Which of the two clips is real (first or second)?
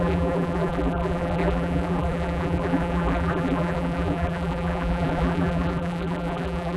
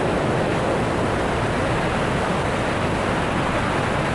second